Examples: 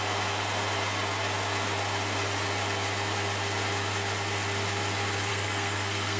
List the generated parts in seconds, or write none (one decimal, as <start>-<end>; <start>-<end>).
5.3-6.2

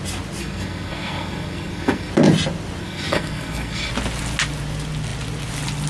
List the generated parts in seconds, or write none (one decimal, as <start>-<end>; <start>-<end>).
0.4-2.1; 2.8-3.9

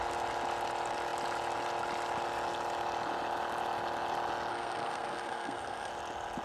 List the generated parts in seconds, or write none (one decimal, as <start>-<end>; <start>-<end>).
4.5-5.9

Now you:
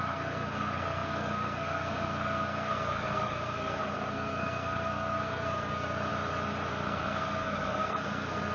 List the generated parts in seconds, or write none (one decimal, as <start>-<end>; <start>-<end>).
0.0-6.1; 6.7-8.5

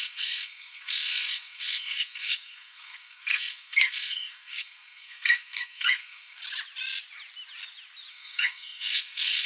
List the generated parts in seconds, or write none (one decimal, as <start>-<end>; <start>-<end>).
0.0-6.4; 8.1-9.5